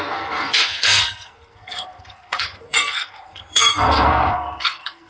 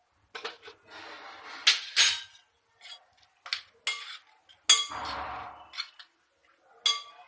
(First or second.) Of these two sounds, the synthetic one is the first